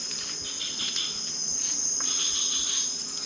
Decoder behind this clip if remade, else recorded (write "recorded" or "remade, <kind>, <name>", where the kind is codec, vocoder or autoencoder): recorded